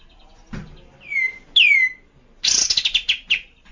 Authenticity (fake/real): real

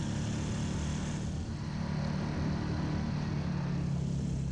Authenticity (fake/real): real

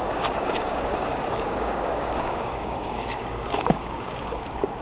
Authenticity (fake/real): fake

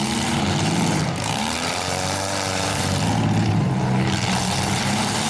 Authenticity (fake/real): fake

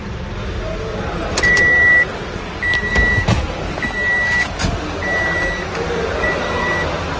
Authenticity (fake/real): real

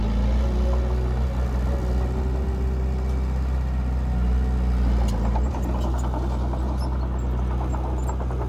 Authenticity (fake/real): real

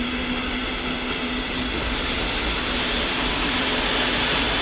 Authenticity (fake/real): real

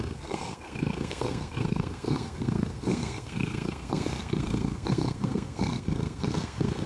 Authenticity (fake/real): fake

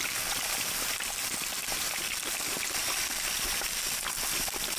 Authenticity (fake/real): real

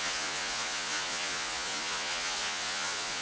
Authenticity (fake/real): fake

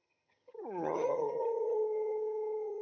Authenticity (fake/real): fake